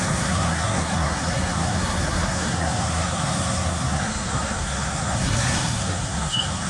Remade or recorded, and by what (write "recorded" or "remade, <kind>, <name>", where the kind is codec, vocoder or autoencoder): remade, codec, SNAC